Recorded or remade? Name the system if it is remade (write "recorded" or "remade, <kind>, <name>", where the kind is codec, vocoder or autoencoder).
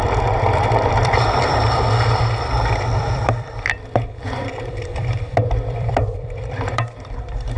remade, vocoder, BigVGAN v2